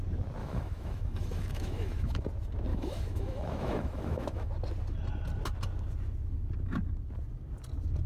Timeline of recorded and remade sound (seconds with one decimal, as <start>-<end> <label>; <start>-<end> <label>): 0.0-0.4 recorded; 0.4-2.2 remade; 2.2-2.7 recorded; 2.7-4.5 remade; 4.5-8.1 recorded